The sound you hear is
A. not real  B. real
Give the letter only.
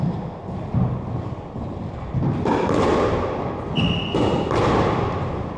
B